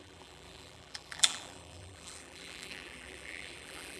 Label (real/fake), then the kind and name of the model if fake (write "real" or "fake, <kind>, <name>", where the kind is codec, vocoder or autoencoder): fake, vocoder, BigVGAN v2